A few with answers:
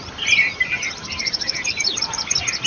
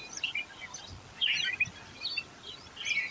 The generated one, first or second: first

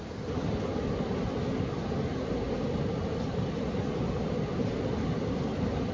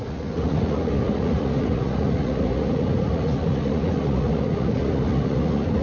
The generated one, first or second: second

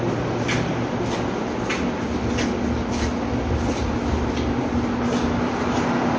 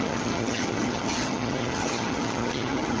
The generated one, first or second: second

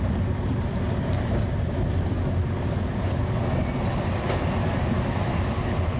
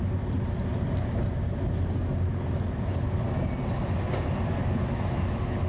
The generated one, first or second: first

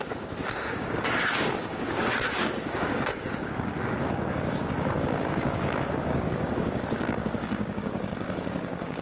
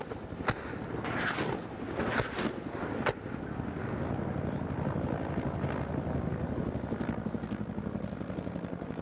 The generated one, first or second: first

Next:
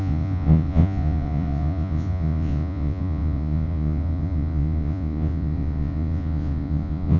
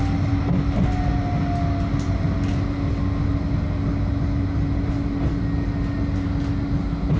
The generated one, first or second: first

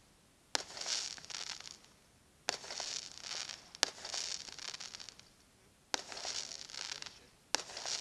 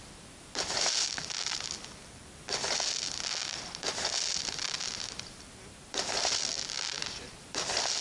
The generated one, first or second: second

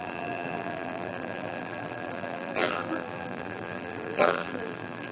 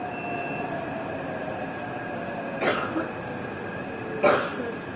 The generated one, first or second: first